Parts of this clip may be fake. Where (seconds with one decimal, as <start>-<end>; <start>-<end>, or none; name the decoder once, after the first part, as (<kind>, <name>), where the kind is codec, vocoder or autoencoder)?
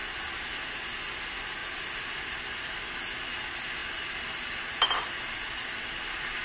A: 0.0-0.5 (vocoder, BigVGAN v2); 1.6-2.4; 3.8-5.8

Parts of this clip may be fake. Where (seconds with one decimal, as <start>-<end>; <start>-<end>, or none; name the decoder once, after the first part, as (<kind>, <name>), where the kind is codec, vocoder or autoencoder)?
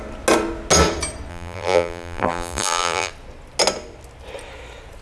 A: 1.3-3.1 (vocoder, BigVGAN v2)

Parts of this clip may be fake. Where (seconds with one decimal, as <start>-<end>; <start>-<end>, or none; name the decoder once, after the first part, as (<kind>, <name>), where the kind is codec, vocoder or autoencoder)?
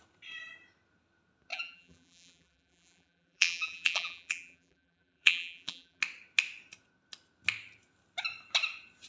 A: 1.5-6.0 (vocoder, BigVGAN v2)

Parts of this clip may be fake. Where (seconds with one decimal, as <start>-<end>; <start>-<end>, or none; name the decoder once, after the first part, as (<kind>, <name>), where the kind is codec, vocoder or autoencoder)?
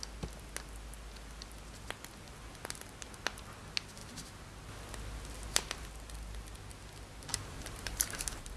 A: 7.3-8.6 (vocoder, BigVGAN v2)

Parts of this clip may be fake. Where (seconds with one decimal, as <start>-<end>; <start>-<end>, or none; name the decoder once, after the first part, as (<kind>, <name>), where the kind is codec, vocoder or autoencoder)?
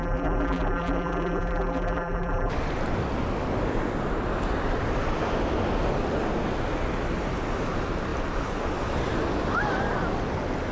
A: 0.0-2.5 (vocoder, BigVGAN v2)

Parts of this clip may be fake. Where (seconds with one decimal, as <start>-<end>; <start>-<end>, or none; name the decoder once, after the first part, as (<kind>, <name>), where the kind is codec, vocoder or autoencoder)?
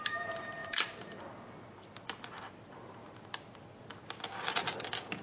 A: 0.6-1.2 (vocoder, BigVGAN v2)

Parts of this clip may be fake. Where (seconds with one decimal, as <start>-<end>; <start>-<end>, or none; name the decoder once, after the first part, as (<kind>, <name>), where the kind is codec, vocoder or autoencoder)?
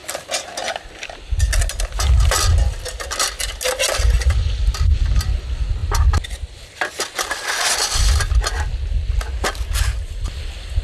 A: none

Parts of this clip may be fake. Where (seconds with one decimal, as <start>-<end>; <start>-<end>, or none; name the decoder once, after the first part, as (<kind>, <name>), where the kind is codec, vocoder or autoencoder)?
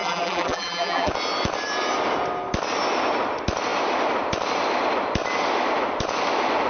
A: 0.0-1.1 (vocoder, BigVGAN v2)